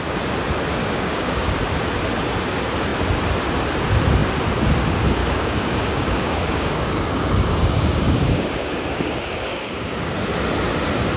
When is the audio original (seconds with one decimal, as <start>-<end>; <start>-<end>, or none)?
0.0-0.8; 1.6-5.2; 10.1-11.2